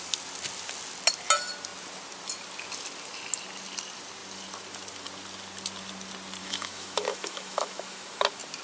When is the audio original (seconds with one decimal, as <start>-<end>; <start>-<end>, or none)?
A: 0.0-6.4; 8.2-8.6